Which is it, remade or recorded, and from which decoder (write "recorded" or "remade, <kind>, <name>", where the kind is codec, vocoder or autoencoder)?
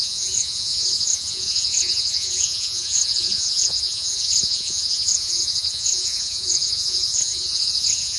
remade, vocoder, Vocos